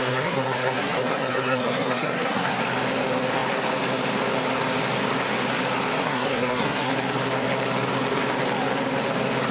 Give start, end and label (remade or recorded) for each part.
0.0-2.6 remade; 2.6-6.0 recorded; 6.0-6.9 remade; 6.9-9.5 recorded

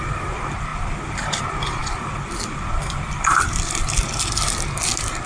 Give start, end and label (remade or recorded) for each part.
0.0-5.3 recorded

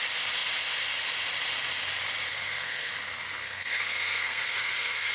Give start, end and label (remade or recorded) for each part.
0.0-2.3 recorded; 2.3-2.9 remade; 2.9-3.4 recorded; 3.4-5.1 remade

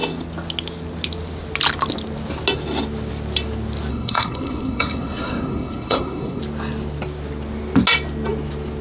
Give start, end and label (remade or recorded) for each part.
0.0-3.9 recorded; 3.9-6.4 remade; 6.4-8.8 recorded